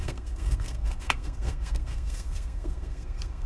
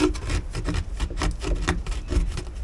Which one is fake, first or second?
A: first